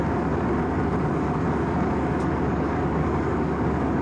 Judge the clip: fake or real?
fake